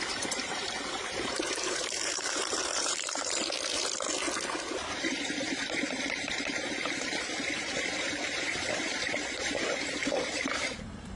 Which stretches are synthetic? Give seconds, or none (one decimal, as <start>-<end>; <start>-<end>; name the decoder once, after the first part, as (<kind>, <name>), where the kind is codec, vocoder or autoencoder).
0.0-3.4 (vocoder, BigVGAN v2); 5.0-11.2